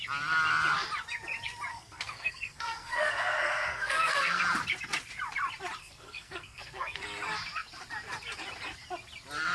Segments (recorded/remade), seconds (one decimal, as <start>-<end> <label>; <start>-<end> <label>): 0.0-1.7 recorded; 1.7-4.4 remade; 4.4-5.8 recorded; 5.8-7.0 remade; 7.0-9.5 recorded